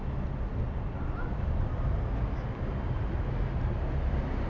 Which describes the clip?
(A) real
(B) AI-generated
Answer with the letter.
A